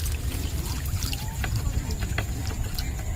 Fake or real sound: real